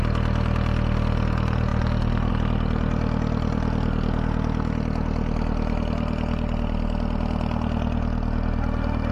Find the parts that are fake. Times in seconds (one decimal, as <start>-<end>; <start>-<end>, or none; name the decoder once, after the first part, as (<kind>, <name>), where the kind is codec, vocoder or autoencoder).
none